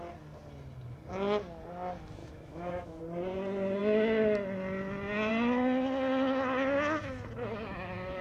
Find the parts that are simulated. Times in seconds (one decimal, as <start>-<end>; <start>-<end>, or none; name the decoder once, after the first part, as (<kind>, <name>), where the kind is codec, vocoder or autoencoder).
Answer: 2.2-3.0 (autoencoder, DAC-VAE)